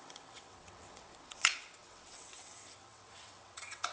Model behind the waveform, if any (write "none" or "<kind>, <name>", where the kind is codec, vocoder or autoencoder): vocoder, WaveNeXt